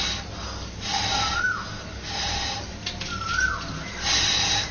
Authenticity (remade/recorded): recorded